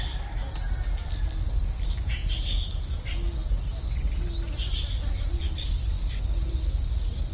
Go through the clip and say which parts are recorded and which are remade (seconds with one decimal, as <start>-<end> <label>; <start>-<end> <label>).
0.0-7.3 recorded